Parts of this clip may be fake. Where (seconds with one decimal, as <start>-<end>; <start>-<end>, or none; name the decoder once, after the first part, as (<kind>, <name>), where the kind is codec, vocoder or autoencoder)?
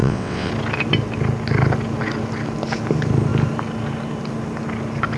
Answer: 0.0-0.5 (vocoder, WaveNeXt)